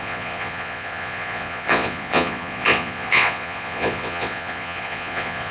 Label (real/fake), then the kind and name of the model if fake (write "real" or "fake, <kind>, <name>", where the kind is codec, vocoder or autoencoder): fake, vocoder, Vocos